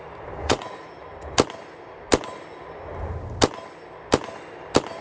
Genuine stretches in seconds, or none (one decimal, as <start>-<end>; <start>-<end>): 0.0-0.4; 0.9-5.0